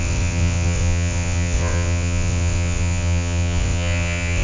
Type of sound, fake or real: fake